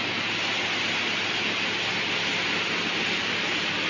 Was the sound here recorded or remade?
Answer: recorded